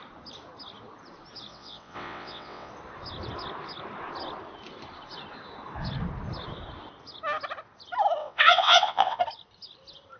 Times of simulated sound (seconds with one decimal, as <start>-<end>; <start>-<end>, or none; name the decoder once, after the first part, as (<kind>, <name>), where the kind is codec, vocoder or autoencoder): 1.5-2.7 (vocoder, WaveNeXt); 8.2-9.2